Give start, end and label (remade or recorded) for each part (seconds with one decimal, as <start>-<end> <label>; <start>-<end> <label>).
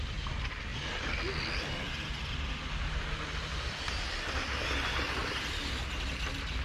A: 0.0-5.2 recorded; 5.2-5.8 remade; 5.8-6.6 recorded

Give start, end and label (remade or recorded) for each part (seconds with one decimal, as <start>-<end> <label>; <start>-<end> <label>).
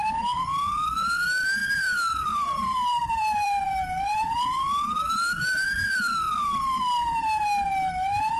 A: 0.0-1.6 recorded; 1.6-6.0 remade; 6.0-8.4 recorded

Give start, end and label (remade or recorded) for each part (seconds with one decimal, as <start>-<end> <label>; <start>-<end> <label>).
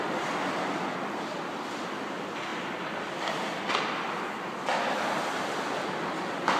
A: 0.0-6.6 recorded